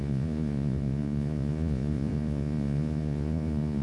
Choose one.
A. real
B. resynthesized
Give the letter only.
B